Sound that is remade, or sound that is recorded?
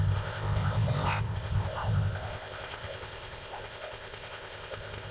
remade